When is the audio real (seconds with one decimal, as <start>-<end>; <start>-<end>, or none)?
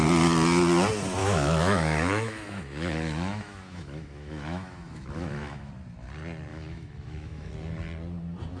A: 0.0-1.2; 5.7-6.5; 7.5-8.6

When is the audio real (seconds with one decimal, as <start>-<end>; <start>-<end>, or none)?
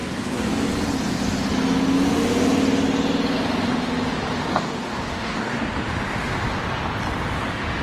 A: 0.7-4.5; 5.6-7.8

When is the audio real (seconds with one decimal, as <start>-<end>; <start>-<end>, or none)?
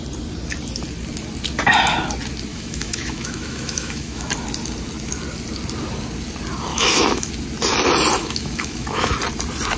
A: 0.0-2.5; 4.3-6.7; 7.3-8.2; 9.1-9.8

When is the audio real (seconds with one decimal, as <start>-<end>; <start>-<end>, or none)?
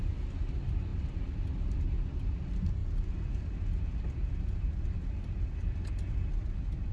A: 0.0-6.9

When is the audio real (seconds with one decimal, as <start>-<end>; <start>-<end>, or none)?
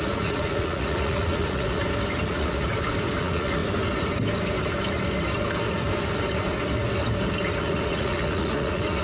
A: 1.8-2.3; 2.7-3.2; 3.6-7.6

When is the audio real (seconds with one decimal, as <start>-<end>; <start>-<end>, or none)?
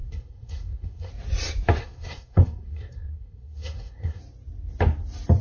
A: 1.1-1.8; 4.2-5.4